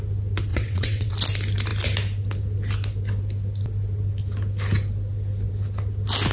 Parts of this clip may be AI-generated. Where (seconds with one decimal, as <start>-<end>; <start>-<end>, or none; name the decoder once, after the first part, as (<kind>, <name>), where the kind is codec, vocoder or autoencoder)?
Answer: 0.5-1.1 (vocoder, WaveNeXt)